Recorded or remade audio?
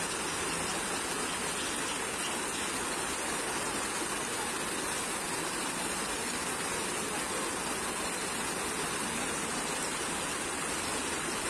recorded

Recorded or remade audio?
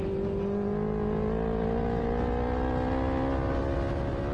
recorded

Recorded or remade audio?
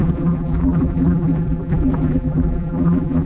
remade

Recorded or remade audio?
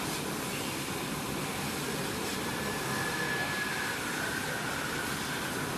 remade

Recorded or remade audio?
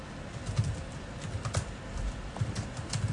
recorded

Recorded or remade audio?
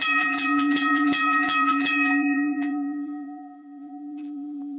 remade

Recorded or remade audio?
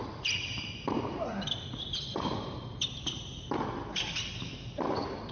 remade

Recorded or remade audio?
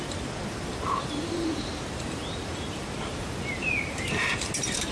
remade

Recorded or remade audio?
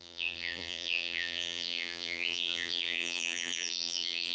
remade